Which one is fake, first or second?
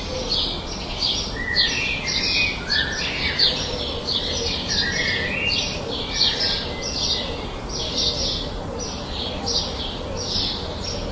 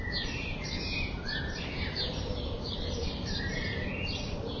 second